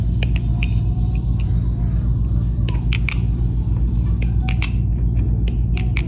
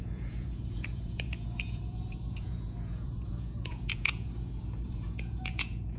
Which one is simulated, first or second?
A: second